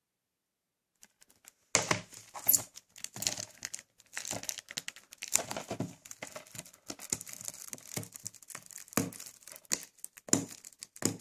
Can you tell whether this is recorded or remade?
recorded